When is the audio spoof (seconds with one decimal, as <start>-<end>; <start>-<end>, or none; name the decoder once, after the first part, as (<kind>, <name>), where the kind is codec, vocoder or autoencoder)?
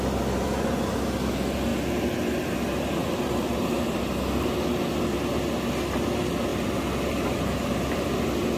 3.0-4.0 (vocoder, BigVGAN v2); 6.5-8.2